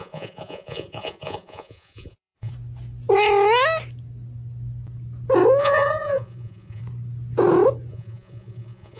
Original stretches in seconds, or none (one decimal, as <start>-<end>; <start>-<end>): 2.5-5.6; 6.8-7.9